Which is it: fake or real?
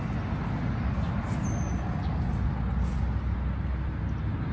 real